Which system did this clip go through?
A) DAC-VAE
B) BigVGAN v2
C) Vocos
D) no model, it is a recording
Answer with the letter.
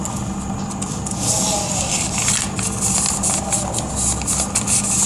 D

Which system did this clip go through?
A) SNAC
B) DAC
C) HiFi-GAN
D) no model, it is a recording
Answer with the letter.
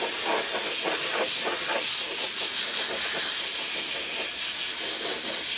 D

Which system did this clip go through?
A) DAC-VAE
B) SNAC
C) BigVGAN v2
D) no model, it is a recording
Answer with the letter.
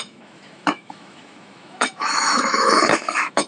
A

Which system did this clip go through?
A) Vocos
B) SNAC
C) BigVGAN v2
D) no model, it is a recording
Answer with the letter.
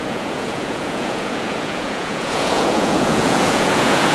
A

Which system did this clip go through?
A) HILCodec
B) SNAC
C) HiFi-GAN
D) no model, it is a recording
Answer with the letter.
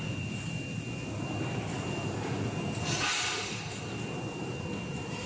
D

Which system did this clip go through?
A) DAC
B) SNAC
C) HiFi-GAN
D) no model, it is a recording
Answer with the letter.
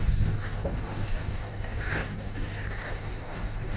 A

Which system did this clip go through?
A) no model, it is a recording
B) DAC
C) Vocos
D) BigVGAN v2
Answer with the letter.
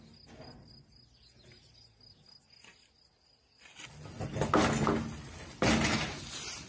A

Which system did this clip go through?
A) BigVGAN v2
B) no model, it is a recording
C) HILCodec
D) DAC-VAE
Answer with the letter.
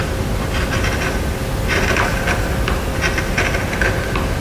B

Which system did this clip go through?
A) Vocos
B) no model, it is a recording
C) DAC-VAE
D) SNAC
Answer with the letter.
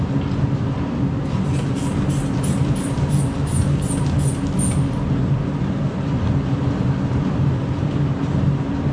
B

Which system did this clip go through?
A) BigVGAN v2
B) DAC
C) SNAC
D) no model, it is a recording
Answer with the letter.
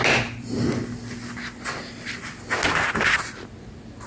D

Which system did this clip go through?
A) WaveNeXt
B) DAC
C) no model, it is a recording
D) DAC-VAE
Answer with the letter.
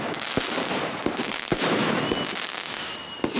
C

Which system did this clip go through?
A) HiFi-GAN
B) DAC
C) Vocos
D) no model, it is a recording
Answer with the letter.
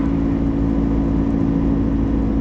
D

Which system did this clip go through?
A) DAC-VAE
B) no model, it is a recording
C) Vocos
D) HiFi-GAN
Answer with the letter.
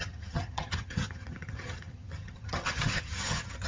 D